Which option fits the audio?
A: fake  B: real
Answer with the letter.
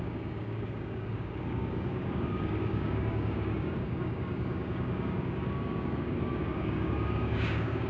A